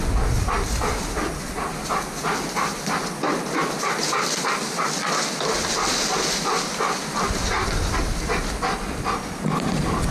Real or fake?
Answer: real